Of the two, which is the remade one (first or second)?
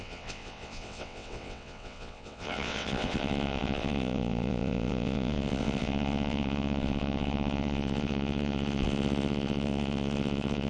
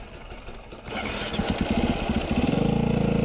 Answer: first